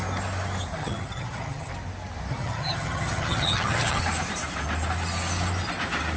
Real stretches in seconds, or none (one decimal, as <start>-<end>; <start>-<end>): 0.0-0.8; 1.7-2.3; 4.0-6.2